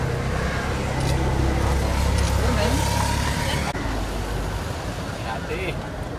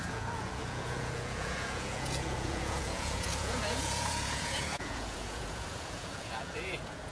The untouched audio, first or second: first